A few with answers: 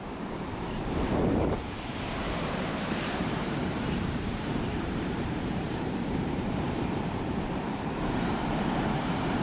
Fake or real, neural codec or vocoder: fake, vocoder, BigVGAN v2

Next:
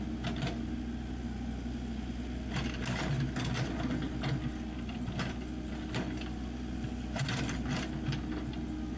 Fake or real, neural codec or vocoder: real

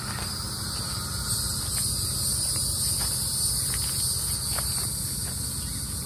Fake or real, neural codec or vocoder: real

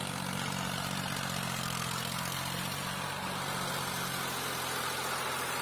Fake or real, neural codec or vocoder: real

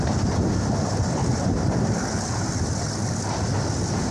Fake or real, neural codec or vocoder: real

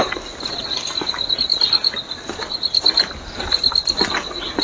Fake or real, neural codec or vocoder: real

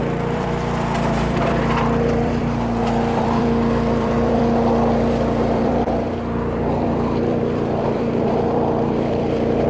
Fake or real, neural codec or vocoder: fake, vocoder, BigVGAN v2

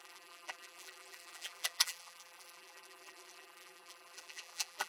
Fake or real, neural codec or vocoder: fake, vocoder, BigVGAN v2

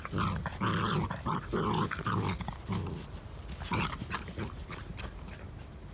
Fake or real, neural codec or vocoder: real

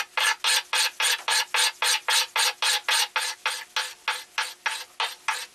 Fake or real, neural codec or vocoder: real